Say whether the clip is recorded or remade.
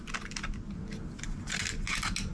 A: recorded